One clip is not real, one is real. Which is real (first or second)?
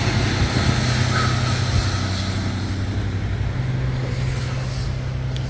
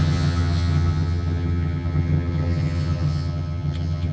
first